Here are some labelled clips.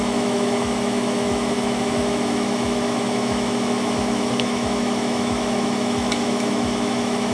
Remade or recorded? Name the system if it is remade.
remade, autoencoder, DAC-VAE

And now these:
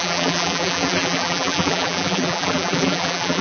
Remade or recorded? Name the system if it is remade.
remade, vocoder, BigVGAN v2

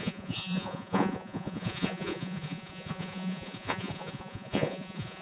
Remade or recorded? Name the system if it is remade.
remade, vocoder, Vocos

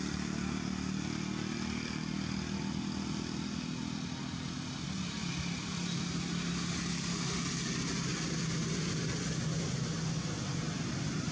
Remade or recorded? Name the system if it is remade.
recorded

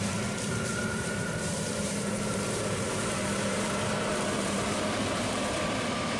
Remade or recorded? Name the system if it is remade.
remade, vocoder, BigVGAN v2